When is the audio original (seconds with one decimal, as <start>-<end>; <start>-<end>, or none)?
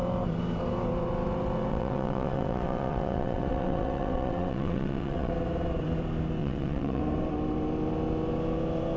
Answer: 0.0-1.7; 5.3-6.4; 7.0-9.0